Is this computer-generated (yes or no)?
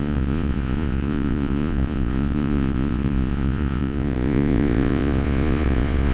yes